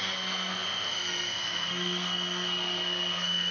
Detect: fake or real fake